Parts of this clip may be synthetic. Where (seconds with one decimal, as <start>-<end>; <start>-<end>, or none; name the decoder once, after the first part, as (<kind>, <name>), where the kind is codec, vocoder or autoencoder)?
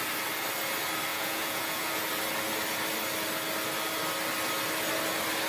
1.1-1.9 (vocoder, Vocos)